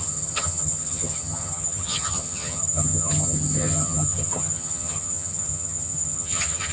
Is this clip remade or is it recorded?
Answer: remade